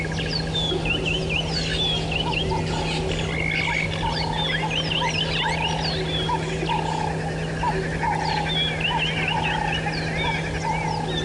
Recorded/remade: recorded